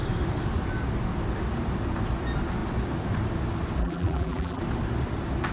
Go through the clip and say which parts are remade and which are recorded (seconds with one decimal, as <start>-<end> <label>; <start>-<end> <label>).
0.0-3.8 recorded; 3.8-4.6 remade; 4.6-5.5 recorded